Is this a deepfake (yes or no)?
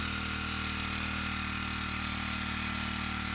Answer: no